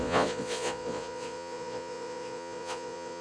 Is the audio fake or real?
fake